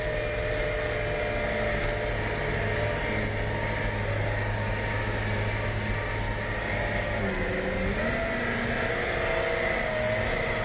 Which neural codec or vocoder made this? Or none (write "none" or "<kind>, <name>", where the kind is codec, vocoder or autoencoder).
none